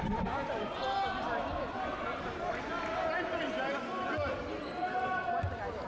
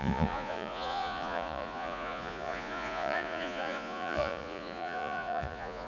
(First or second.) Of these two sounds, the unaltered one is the first